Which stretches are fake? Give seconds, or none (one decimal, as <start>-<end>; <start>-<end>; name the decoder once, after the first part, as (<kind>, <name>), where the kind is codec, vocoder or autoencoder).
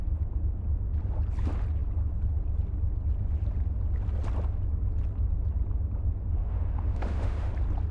6.4-7.5 (autoencoder, DAC-VAE)